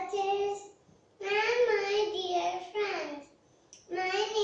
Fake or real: real